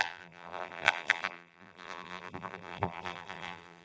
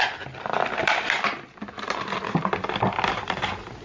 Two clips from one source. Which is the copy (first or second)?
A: first